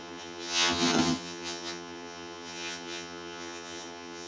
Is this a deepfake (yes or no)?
yes